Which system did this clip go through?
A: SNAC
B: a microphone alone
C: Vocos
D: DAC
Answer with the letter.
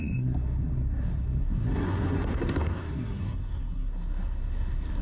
A